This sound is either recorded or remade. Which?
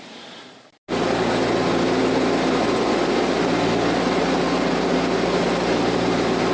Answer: recorded